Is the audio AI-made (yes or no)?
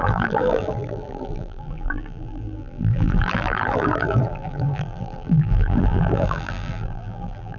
yes